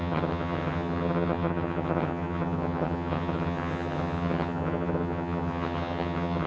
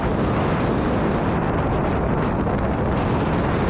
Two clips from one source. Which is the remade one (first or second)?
first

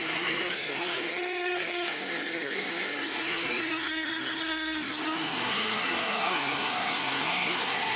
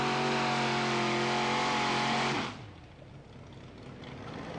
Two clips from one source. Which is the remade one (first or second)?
first